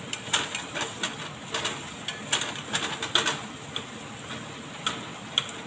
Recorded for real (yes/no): yes